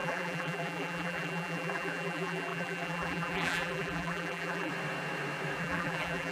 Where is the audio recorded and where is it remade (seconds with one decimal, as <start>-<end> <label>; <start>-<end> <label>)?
0.0-4.7 remade; 4.7-5.6 recorded; 5.6-6.3 remade